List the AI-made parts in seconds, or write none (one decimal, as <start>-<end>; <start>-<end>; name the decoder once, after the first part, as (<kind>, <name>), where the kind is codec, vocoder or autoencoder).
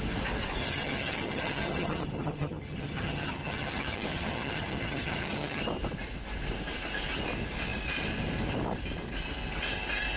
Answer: 0.6-5.6 (vocoder, HiFi-GAN)